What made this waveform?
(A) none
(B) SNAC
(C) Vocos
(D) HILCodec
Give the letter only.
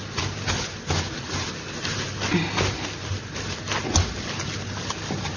A